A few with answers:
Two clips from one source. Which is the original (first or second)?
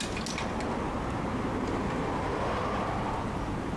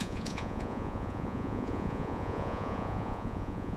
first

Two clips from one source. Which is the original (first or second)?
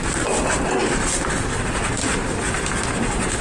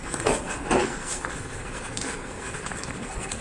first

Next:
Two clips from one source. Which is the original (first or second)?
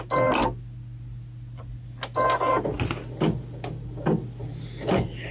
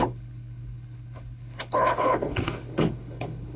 first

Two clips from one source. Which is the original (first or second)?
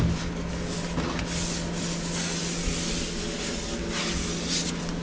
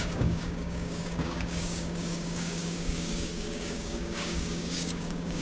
first